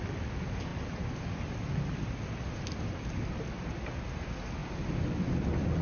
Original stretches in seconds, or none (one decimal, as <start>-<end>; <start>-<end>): 0.0-5.8